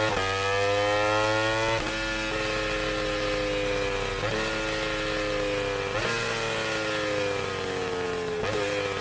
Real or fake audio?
real